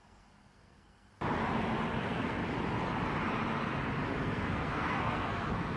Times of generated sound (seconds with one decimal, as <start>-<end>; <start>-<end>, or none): 0.0-1.1; 2.0-2.4; 4.2-5.8